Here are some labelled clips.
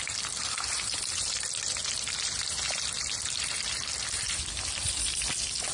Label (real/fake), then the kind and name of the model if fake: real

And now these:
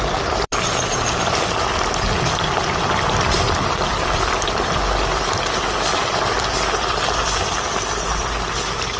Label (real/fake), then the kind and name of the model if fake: fake, vocoder, BigVGAN v2